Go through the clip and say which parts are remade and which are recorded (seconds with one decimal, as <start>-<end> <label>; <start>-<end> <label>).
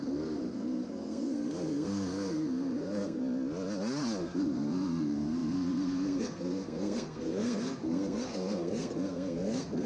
0.0-3.2 remade; 3.2-4.2 recorded; 4.2-9.9 remade